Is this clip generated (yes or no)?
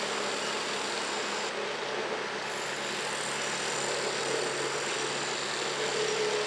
no